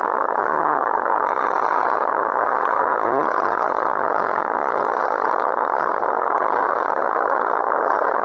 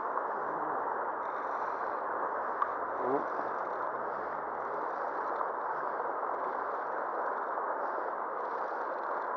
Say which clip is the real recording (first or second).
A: second